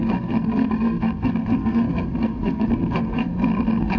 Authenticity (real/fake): fake